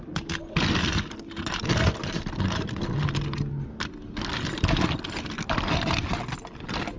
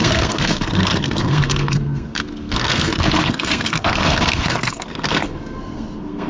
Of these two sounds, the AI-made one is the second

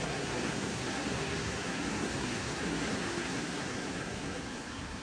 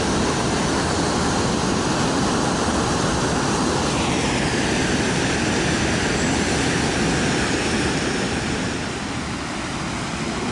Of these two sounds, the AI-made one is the first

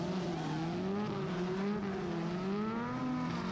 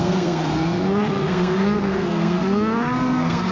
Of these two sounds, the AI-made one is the second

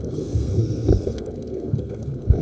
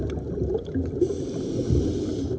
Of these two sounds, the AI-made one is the first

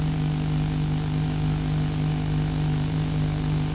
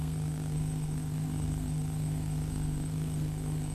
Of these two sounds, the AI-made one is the second